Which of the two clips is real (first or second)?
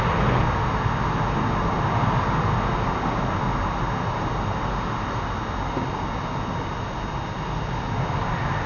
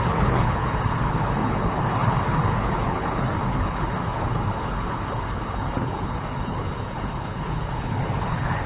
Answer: first